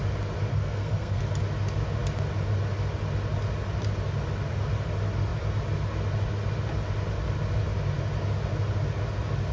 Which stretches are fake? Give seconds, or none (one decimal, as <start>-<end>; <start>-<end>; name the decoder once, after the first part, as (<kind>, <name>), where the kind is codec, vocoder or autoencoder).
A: 0.5-1.2 (codec, SNAC)

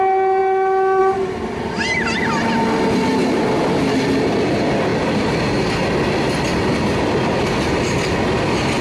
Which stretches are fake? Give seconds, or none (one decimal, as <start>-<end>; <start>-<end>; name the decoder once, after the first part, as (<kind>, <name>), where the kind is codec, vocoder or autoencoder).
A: none

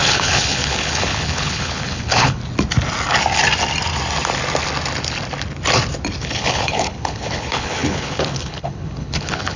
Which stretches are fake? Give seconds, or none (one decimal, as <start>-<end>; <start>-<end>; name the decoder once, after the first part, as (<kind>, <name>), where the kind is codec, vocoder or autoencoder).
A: 0.0-2.4 (codec, HILCodec); 6.2-9.6

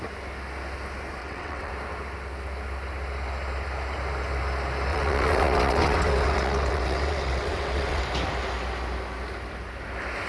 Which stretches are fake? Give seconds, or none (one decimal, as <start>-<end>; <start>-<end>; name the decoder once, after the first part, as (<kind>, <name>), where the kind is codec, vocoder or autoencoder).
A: 1.2-1.7 (vocoder, WaveNeXt); 4.9-8.0

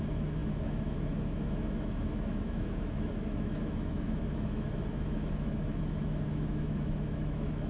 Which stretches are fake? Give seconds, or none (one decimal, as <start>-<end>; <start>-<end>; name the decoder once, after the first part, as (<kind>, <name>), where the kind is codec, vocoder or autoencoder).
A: 0.0-7.7 (autoencoder, DAC-VAE)

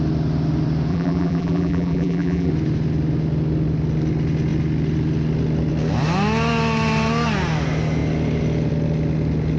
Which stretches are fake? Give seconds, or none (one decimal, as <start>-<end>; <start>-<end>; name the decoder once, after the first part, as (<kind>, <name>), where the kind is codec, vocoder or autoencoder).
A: 0.9-2.5 (vocoder, BigVGAN v2)